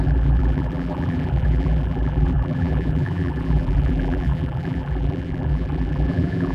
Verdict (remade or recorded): remade